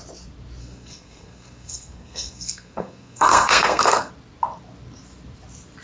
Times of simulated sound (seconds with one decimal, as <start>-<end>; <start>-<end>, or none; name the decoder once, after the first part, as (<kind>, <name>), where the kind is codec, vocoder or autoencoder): 0.6-4.1 (codec, SNAC)